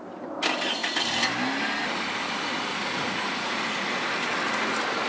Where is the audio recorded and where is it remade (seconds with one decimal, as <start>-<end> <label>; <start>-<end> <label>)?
0.0-2.7 recorded; 2.7-3.9 remade; 3.9-5.1 recorded